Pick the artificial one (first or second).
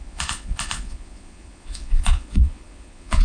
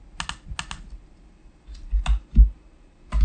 first